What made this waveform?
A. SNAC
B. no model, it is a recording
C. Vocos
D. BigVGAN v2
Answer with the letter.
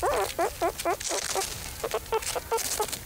B